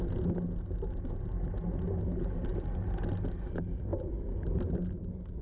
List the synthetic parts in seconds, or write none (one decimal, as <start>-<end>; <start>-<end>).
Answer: none